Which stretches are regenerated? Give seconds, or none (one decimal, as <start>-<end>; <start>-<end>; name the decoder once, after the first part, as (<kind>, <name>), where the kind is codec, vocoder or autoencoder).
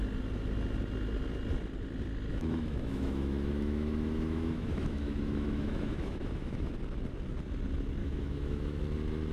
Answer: 2.3-6.7 (autoencoder, DAC-VAE); 8.0-8.8